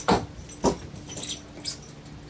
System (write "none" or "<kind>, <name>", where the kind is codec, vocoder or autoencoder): none